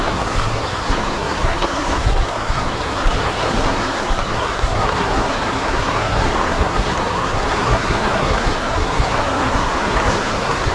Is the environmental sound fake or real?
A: fake